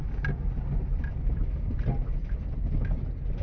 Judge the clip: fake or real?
real